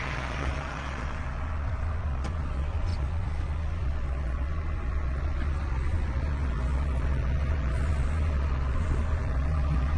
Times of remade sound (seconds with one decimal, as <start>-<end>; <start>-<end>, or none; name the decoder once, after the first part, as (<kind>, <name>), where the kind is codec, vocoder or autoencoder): 0.0-10.0 (vocoder, Vocos)